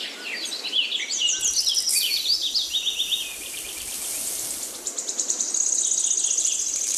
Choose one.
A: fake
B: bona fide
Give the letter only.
B